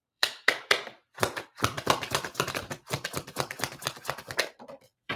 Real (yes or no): no